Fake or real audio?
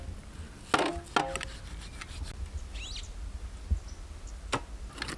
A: real